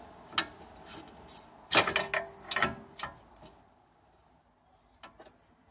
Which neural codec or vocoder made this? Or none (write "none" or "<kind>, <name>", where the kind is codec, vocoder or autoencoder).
none